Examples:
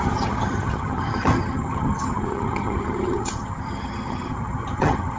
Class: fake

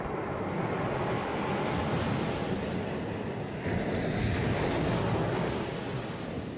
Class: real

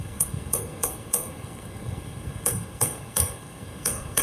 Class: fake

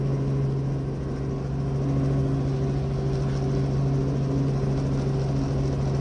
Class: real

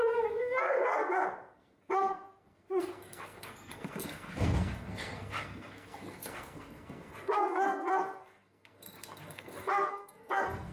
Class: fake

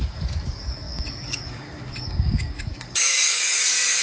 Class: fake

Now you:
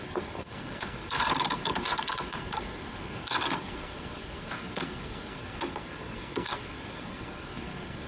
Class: fake